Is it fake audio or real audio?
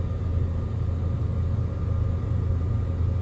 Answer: real